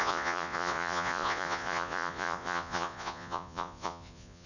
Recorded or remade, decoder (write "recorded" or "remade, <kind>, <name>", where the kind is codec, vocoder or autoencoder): remade, vocoder, Vocos